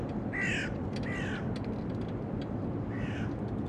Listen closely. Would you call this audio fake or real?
real